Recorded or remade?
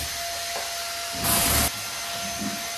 recorded